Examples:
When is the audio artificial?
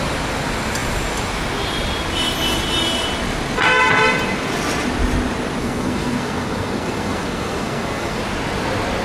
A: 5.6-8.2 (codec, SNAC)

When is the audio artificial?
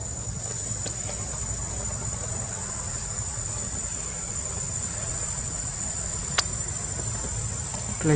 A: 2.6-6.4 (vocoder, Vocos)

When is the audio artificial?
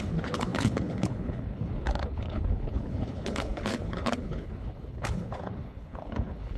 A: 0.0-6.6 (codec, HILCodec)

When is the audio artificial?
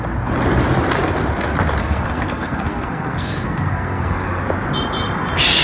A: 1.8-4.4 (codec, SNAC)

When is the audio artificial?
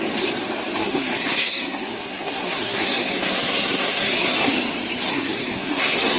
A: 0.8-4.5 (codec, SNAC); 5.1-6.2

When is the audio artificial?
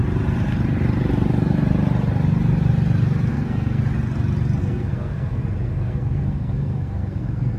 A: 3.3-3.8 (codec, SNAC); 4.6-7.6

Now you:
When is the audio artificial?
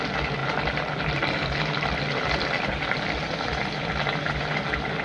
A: none